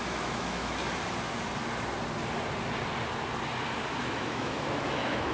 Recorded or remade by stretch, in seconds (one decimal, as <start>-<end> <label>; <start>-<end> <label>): 0.0-0.8 remade; 0.8-4.0 recorded; 4.0-5.3 remade